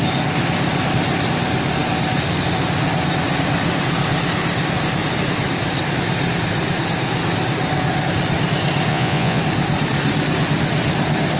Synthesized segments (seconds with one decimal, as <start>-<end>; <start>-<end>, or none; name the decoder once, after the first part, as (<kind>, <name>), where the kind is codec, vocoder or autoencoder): 8.9-9.4 (vocoder, Vocos)